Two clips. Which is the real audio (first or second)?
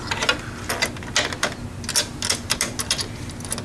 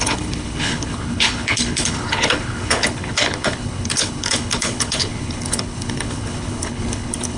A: first